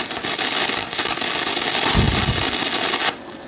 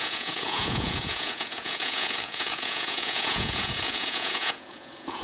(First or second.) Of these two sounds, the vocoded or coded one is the second